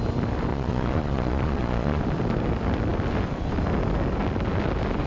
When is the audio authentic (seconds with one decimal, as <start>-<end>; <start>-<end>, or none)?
0.0-0.5; 2.0-5.1